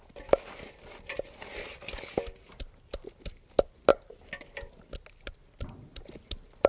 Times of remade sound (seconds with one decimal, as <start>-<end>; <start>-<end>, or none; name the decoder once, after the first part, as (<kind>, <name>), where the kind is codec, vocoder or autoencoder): none